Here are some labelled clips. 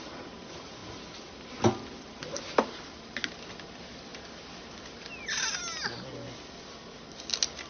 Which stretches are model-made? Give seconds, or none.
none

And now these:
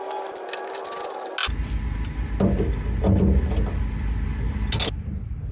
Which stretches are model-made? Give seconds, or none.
none

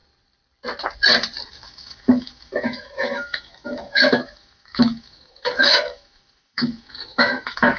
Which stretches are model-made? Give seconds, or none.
1.5-7.8 (autoencoder, DAC-VAE)